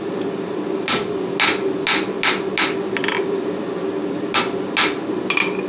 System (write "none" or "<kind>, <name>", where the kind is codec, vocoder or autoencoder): none